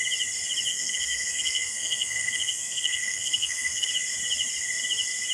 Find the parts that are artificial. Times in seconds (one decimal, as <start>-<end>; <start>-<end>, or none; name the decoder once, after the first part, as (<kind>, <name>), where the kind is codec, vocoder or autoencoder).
0.7-3.9 (codec, SNAC)